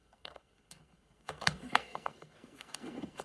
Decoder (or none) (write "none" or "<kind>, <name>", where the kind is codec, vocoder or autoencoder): codec, SNAC